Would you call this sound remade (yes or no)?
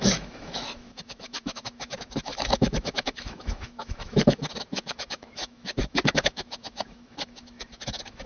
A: yes